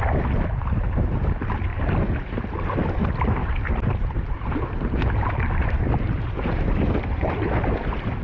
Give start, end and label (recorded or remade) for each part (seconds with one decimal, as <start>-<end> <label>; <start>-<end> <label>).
0.0-8.2 recorded